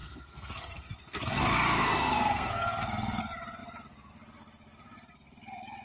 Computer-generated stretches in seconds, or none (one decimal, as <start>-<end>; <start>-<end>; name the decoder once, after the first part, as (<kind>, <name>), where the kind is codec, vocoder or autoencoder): 0.0-3.2 (codec, SNAC)